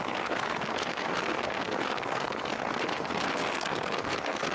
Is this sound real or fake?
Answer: fake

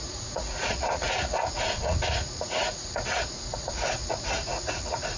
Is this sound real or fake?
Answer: fake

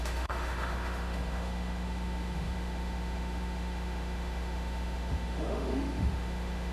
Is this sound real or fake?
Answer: fake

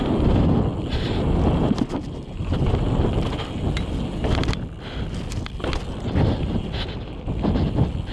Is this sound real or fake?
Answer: real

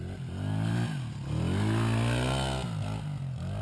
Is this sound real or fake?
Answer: real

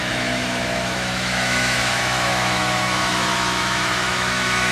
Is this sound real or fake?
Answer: fake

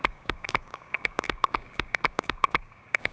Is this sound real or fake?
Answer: fake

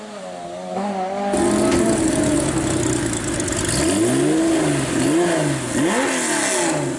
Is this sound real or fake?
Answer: real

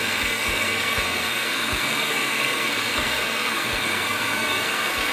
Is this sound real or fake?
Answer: fake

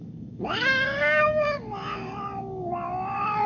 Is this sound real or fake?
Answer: fake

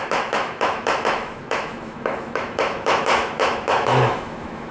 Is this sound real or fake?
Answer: fake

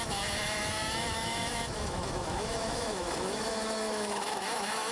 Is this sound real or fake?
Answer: fake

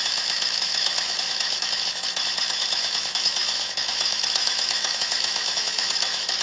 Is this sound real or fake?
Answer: fake